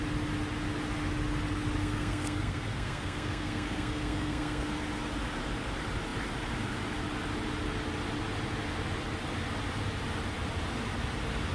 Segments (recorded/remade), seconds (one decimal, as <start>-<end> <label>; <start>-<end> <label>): 0.0-1.8 recorded; 1.8-4.7 remade; 4.7-11.5 recorded